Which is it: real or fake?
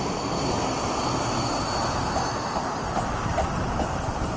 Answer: real